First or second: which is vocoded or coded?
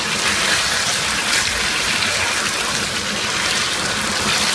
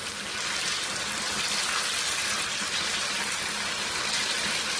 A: first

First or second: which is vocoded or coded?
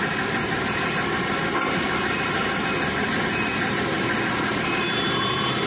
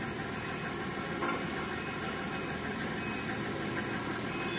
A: first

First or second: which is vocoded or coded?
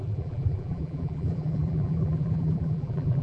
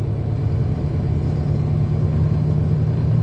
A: first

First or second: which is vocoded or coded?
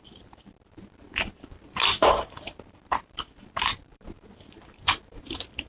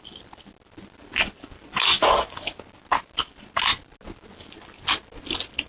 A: first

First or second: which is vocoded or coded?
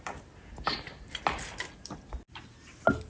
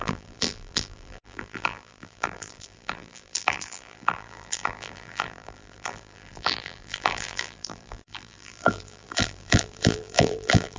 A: second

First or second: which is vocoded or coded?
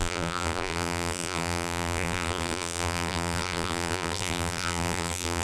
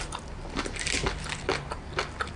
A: first